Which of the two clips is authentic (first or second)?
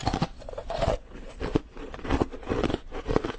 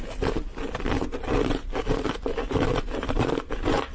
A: second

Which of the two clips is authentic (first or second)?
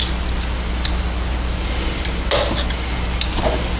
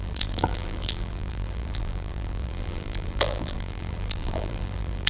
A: first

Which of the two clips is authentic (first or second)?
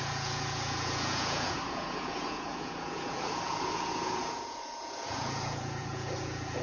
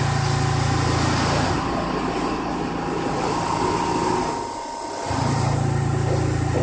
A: second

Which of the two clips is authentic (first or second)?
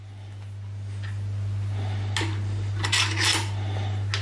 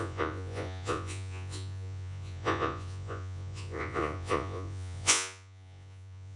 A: first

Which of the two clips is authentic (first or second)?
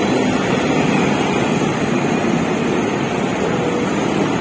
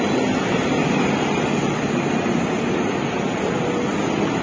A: second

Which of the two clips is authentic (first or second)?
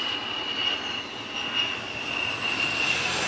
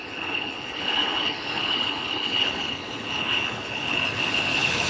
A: first